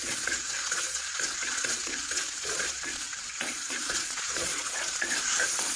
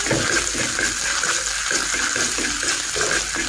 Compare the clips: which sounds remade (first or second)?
first